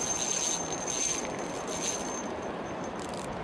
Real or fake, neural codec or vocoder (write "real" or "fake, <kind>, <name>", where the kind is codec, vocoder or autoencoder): real